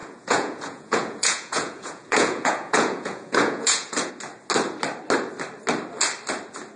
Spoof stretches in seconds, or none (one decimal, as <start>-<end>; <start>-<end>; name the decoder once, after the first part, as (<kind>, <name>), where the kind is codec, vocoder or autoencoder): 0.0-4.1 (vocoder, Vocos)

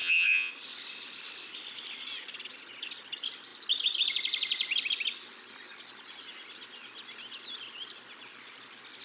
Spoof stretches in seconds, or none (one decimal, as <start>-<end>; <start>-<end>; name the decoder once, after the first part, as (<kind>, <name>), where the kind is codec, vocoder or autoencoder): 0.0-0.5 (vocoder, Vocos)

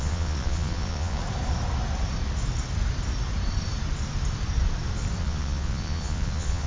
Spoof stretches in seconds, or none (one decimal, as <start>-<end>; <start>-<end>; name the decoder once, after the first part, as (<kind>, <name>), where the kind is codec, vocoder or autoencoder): 0.0-1.2 (vocoder, Vocos); 5.2-6.7